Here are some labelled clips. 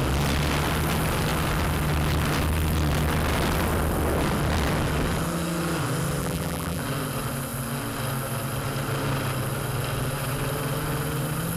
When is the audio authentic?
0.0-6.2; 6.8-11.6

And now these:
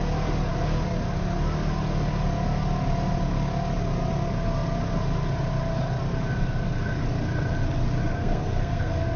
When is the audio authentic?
0.0-8.1

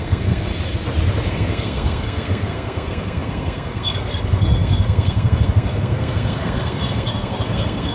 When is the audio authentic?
0.5-1.3

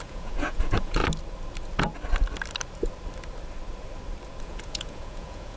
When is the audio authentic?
1.0-4.4

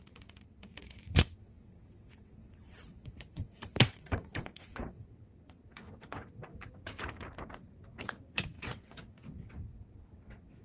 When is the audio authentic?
6.5-8.0

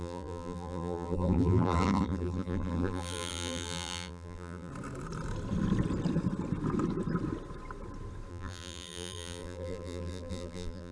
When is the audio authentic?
4.7-8.3